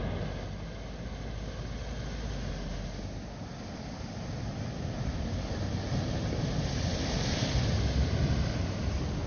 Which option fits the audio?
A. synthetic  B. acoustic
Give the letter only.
B